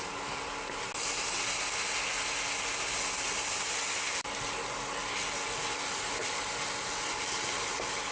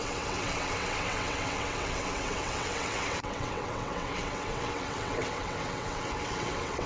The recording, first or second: first